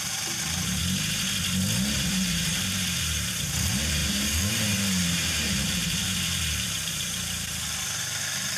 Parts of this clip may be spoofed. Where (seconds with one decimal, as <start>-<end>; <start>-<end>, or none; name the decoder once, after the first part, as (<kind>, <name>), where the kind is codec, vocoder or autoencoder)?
0.0-0.8 (vocoder, BigVGAN v2); 2.1-8.6